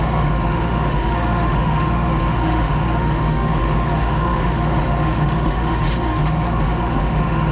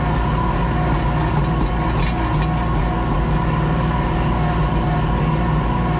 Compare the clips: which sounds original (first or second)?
second